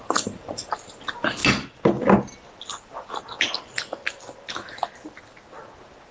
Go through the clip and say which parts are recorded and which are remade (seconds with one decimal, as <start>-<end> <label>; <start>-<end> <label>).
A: 0.0-0.7 remade; 0.7-6.1 recorded